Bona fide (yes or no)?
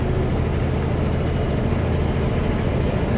yes